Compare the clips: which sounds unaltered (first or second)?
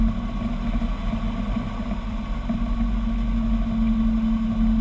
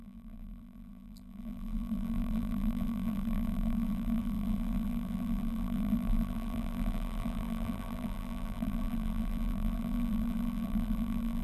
first